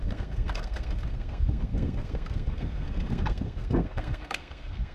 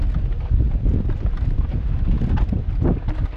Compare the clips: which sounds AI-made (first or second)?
first